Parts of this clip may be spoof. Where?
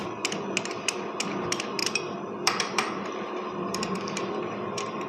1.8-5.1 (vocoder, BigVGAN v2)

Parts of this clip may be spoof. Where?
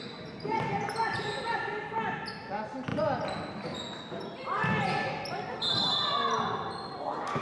none